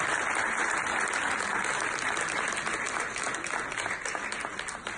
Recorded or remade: recorded